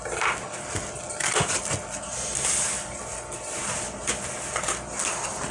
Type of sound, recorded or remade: recorded